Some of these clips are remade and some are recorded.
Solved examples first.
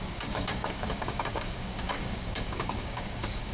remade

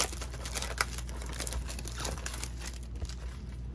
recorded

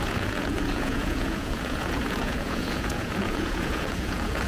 remade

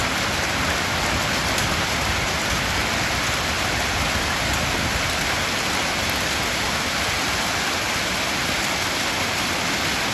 recorded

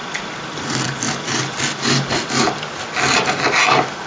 recorded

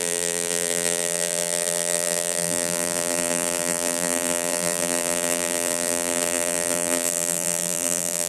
remade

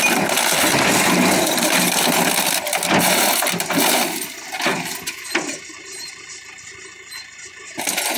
recorded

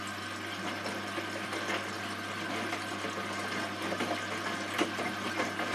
recorded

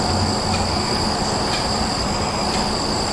recorded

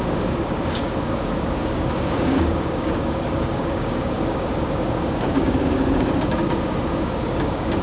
remade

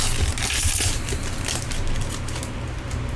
recorded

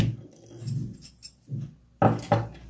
recorded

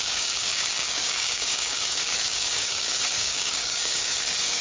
remade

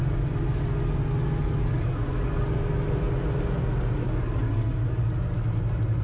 recorded